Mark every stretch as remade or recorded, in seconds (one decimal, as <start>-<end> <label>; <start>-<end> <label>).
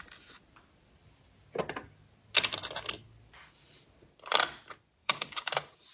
0.0-5.0 recorded; 5.0-5.5 remade; 5.5-5.9 recorded